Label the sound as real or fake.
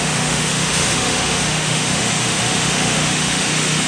fake